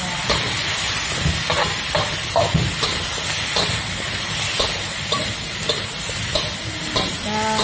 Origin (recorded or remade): recorded